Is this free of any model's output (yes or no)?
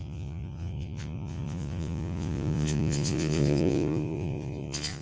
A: no